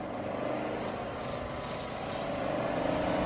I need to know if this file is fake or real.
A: real